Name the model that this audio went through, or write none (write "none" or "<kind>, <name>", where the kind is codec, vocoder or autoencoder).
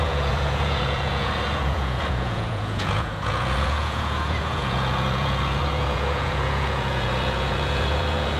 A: vocoder, Vocos